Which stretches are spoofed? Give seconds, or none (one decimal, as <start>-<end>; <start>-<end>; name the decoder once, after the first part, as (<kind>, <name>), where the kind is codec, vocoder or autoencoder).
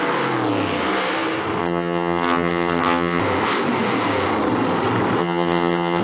1.6-3.2 (vocoder, HiFi-GAN); 5.2-6.0